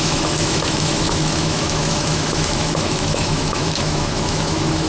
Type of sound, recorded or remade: remade